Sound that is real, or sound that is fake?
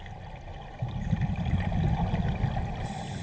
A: real